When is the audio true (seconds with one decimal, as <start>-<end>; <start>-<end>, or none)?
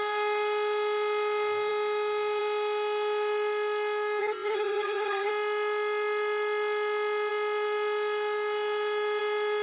0.0-4.2; 5.3-9.6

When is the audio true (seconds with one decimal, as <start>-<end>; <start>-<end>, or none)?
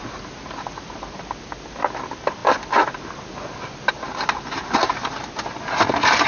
0.0-6.3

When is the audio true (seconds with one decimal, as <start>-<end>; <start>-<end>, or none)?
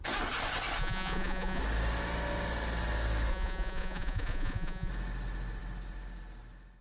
0.0-0.8; 1.6-3.3; 4.9-6.8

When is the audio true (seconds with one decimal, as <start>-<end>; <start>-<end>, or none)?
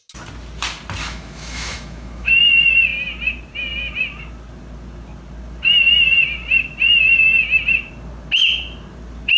0.0-1.0; 2.3-9.4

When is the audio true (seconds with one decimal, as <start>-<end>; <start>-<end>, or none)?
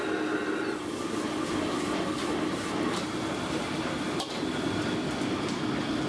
0.0-2.2; 3.9-6.1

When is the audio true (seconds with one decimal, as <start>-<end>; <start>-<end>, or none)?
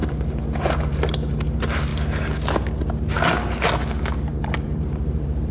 1.9-4.3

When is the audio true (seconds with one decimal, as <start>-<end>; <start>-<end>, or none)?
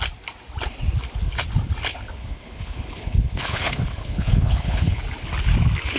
0.0-1.9; 5.0-6.0